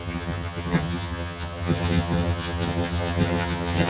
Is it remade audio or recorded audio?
remade